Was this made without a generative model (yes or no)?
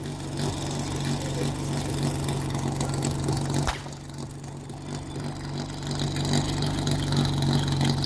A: yes